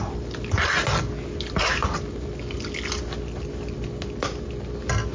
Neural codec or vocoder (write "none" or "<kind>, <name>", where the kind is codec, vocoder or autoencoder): none